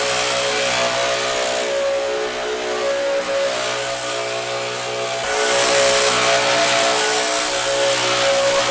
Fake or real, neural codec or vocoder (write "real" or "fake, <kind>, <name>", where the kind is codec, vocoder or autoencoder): real